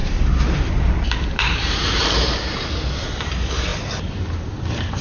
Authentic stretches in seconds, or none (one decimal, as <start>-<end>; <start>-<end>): 2.0-2.6; 3.7-4.4

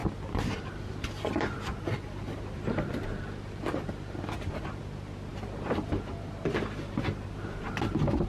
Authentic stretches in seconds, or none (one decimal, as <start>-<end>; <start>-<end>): 0.0-8.3

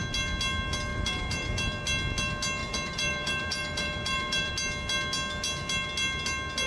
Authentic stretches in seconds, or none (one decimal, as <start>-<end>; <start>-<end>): 0.0-0.9; 1.8-2.6; 4.5-6.7

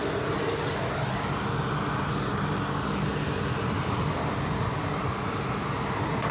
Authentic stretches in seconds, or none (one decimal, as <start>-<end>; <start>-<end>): 0.0-6.3

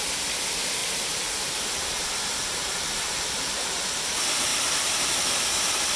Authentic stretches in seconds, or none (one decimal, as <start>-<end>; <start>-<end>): 0.0-0.8; 3.6-4.5; 5.1-6.0

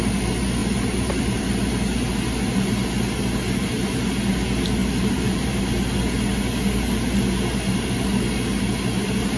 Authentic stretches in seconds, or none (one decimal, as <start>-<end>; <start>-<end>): 0.0-0.6; 1.4-4.8; 5.6-9.4